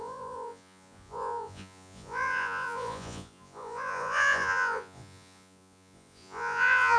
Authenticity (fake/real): fake